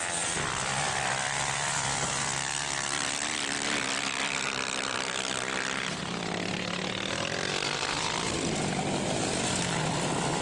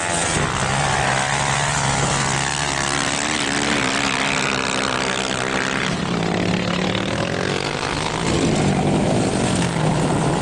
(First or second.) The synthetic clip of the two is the first